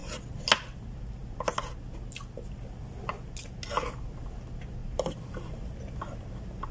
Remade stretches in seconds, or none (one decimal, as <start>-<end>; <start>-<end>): 4.8-5.7